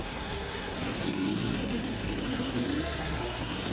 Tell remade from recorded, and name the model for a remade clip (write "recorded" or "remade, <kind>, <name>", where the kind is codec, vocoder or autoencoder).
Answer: remade, codec, SNAC